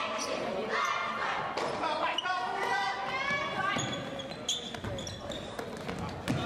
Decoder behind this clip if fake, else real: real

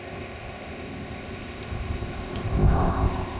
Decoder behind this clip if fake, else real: fake, codec, ZipCodec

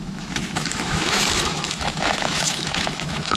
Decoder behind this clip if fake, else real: fake, autoencoder, DAC-VAE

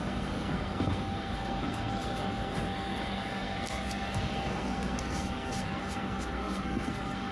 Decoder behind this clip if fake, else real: fake, codec, SNAC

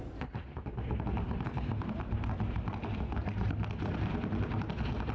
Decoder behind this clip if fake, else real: real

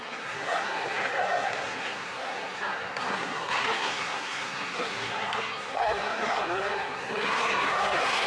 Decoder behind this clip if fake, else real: fake, codec, SNAC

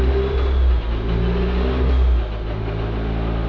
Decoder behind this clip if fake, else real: real